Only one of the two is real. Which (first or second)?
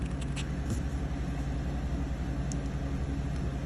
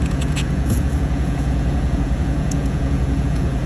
first